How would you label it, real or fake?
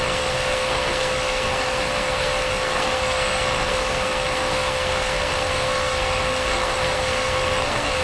fake